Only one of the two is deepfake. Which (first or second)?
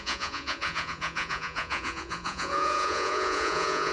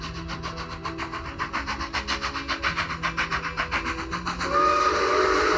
first